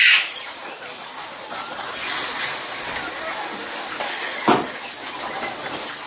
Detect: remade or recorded recorded